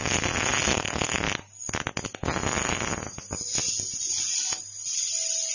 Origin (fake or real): real